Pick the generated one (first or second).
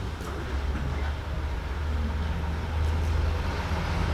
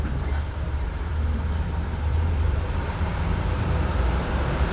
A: second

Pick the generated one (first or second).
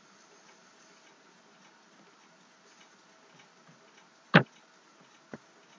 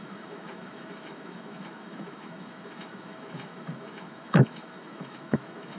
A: second